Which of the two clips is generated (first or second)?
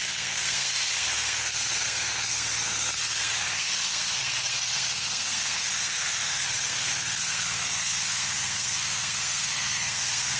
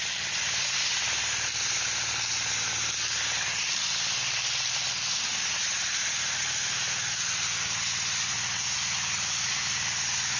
first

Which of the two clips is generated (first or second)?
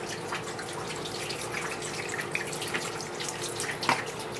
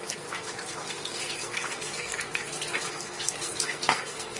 second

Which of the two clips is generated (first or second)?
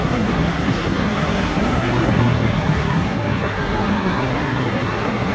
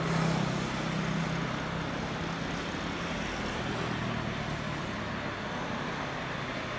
first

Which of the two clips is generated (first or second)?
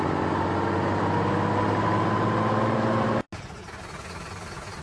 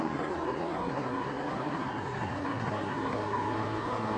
second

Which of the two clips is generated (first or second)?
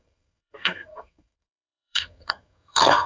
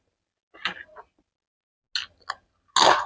first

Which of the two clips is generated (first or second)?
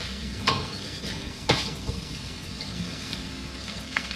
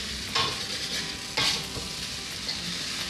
first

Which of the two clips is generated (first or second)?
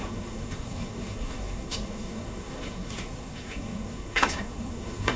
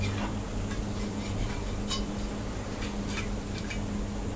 first